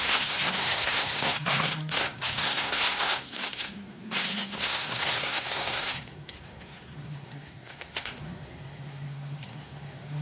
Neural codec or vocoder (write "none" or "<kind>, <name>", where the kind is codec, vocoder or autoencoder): codec, SNAC